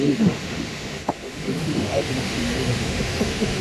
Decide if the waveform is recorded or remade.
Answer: remade